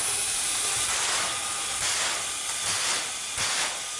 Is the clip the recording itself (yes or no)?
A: yes